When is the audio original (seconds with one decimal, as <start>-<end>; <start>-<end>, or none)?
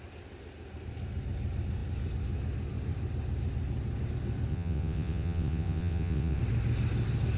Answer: 0.0-4.5; 6.4-7.4